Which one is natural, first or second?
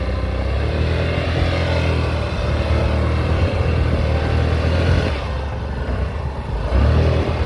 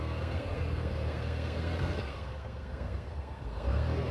first